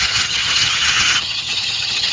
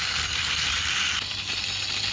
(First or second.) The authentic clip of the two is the second